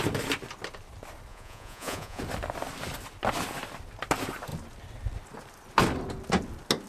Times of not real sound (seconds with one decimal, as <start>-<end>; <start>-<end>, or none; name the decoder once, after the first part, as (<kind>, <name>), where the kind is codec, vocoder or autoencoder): 1.3-2.2 (vocoder, Vocos)